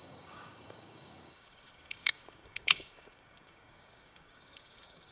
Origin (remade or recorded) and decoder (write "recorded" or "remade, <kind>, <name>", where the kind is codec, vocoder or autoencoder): remade, codec, DAC